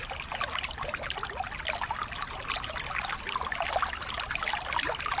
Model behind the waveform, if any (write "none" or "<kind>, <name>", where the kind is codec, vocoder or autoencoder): none